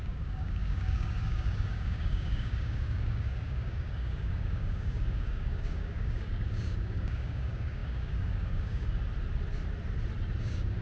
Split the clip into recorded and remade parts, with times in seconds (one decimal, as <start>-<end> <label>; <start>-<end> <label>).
0.0-9.1 remade; 9.1-10.4 recorded; 10.4-10.8 remade